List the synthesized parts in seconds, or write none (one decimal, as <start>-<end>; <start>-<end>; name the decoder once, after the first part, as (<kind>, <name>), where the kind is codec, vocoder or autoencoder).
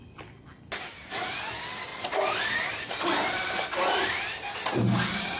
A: none